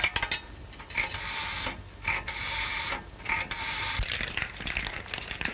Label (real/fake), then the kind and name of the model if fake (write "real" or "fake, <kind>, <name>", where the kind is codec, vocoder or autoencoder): real